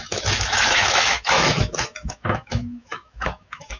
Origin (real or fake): fake